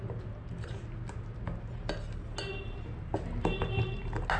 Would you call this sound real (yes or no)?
yes